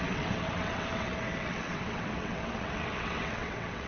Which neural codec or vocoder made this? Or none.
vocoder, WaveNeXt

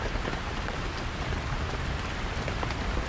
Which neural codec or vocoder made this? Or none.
none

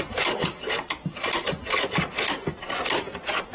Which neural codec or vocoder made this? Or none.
none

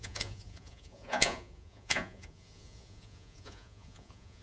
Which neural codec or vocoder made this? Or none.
vocoder, Vocos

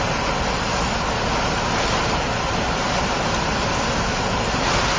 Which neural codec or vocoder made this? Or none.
none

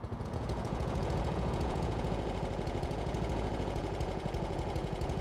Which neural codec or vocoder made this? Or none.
vocoder, Vocos